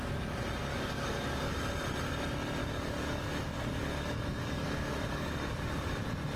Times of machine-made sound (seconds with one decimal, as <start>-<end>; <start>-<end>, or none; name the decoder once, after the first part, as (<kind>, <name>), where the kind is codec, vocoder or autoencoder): 0.7-1.5 (codec, DAC); 2.6-6.0